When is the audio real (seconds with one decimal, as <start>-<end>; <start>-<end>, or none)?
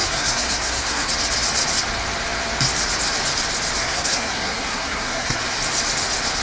1.1-3.8; 5.4-6.4